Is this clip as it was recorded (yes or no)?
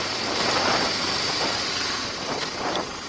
yes